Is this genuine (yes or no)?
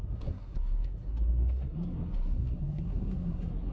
no